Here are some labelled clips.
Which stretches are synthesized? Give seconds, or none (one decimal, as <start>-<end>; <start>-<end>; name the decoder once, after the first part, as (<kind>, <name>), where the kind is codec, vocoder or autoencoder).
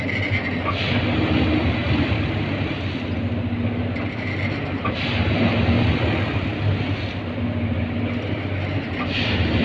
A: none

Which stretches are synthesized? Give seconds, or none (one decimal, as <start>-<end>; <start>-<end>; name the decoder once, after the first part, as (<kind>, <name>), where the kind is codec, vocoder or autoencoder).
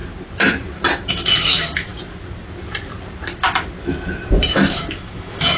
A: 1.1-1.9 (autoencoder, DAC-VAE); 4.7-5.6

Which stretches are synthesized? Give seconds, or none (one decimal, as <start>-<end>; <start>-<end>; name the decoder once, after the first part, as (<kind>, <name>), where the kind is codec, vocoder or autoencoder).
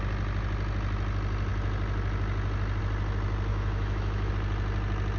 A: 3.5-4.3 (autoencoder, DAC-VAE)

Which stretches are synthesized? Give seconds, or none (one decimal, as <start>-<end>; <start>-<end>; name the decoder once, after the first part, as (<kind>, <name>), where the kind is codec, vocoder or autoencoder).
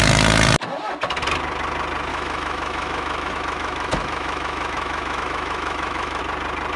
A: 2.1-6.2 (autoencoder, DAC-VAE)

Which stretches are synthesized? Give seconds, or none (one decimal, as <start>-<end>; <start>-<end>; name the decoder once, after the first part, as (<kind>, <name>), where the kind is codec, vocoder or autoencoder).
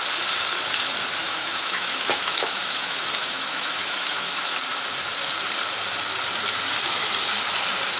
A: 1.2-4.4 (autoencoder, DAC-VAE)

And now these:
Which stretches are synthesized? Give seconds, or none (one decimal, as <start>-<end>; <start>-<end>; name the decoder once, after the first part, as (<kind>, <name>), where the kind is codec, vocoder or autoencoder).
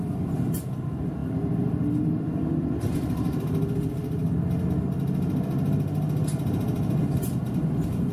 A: none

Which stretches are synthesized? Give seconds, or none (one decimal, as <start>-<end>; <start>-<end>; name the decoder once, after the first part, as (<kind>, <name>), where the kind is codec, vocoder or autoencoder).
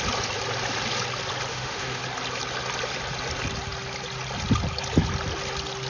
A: 1.5-2.0 (autoencoder, DAC-VAE)